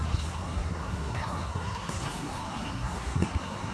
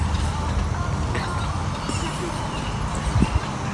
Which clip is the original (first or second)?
second